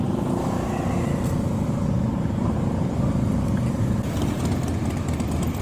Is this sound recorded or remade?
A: recorded